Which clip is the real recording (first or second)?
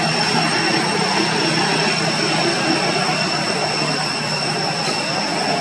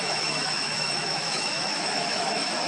first